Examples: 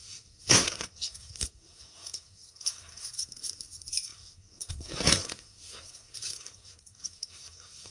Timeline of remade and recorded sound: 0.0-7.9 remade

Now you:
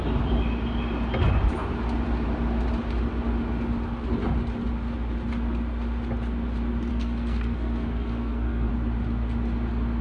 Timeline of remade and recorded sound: 0.0-6.9 recorded; 6.9-8.7 remade; 8.7-10.0 recorded

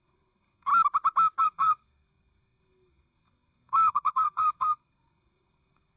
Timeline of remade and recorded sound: 0.0-0.7 remade; 0.7-1.4 recorded; 1.4-6.0 remade